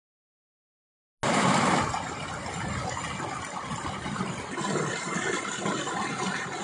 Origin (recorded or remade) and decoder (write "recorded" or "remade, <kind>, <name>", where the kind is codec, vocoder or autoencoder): recorded